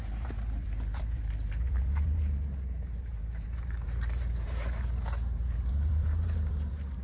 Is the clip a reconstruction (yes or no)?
yes